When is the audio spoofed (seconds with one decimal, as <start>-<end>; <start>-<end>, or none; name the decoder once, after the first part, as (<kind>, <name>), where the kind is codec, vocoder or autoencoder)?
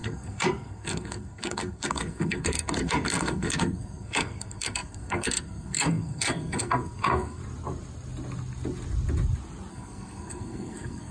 0.0-7.4 (codec, SNAC); 9.7-11.1